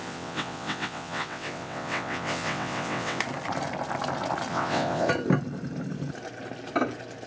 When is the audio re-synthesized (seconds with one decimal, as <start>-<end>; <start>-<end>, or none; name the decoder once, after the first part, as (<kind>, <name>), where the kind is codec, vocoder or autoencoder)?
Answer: 0.0-3.2 (vocoder, WaveNeXt); 4.5-5.1

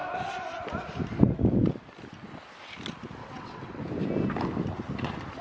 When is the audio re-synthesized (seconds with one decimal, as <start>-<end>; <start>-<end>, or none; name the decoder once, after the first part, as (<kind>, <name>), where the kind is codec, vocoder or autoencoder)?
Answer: 3.2-3.8 (vocoder, WaveNeXt)

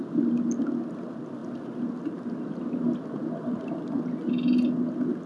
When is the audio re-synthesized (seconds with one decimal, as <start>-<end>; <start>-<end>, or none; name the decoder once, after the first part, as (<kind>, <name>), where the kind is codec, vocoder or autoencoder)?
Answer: none

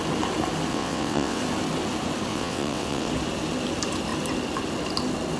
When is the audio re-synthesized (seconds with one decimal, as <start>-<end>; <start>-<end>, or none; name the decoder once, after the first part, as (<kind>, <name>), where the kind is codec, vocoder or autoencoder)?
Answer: 0.7-1.4 (vocoder, WaveNeXt); 2.3-3.1

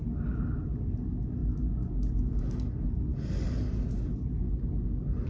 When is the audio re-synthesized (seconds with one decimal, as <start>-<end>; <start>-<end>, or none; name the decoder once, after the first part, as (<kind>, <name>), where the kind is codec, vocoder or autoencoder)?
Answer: none